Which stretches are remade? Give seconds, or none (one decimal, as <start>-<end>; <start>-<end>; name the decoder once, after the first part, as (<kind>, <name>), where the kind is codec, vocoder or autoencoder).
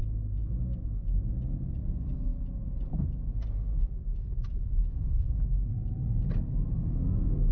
4.9-5.4 (codec, ZipCodec)